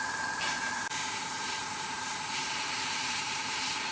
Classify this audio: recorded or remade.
remade